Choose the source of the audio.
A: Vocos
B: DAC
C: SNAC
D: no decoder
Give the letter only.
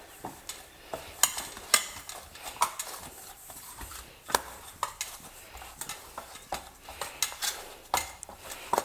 D